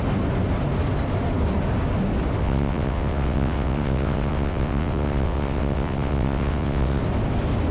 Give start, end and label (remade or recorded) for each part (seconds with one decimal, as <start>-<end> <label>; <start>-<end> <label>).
0.0-2.4 recorded; 2.4-7.0 remade; 7.0-7.7 recorded